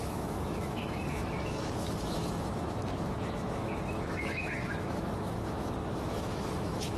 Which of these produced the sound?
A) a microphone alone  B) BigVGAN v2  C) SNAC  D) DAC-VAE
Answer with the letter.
D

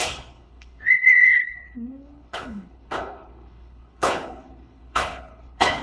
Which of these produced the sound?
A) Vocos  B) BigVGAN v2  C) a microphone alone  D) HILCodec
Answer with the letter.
D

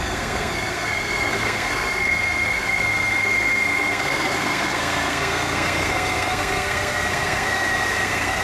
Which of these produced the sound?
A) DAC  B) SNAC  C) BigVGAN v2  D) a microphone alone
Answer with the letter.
B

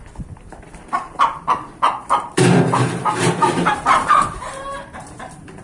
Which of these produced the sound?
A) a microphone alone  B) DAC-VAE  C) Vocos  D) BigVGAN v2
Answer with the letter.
D